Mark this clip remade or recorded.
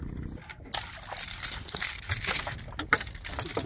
recorded